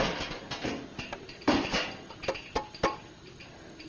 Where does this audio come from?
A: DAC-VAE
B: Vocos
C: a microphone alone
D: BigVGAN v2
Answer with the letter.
C